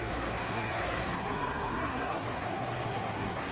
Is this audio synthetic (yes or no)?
yes